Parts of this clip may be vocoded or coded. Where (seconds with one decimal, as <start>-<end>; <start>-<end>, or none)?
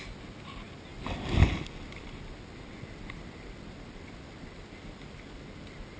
none